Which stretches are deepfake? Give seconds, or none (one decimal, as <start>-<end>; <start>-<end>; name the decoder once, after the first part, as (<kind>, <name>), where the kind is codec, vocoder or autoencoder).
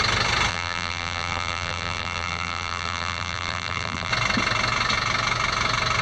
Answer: 0.5-4.1 (vocoder, BigVGAN v2)